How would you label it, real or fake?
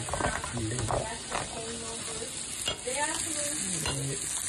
real